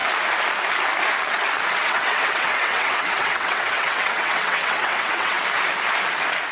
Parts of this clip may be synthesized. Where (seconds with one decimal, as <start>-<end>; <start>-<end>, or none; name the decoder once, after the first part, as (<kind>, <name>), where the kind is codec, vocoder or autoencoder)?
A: 1.8-5.4 (vocoder, WaveNeXt)